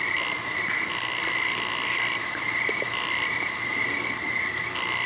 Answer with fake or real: real